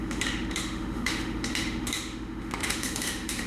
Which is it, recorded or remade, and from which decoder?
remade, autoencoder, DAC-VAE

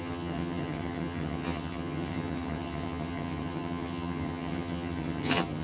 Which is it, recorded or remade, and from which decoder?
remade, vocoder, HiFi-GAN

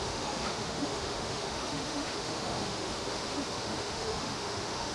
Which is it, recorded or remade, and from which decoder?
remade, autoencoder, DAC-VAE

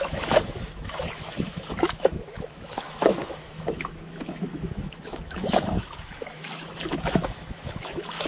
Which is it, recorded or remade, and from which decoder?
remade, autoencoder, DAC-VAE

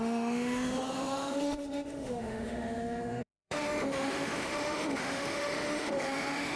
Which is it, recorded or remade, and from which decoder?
remade, autoencoder, DAC-VAE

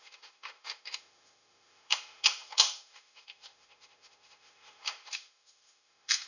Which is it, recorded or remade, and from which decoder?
remade, autoencoder, DAC-VAE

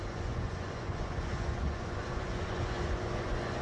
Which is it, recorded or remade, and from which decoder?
remade, vocoder, Vocos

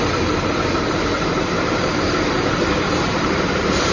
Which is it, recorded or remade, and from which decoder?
remade, vocoder, BigVGAN v2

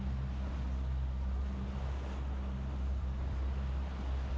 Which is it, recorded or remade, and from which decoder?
recorded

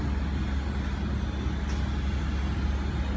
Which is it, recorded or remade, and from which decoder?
recorded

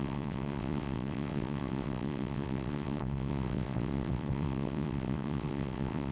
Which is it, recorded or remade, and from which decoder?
remade, vocoder, WaveNeXt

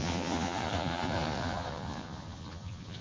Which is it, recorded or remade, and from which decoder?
remade, vocoder, Vocos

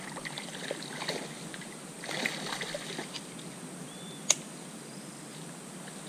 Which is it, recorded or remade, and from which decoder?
recorded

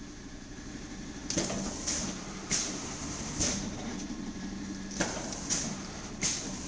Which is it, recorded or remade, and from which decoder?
remade, vocoder, BigVGAN v2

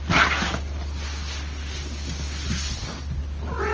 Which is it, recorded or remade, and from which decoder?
recorded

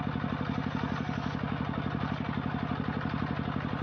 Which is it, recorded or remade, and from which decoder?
recorded